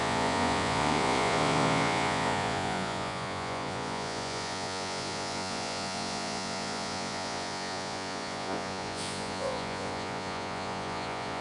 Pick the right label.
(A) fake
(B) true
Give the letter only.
A